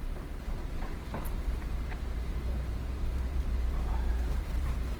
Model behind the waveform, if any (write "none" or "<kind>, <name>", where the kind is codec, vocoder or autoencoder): vocoder, BigVGAN v2